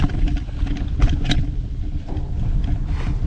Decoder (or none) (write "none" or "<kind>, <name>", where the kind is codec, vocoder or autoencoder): none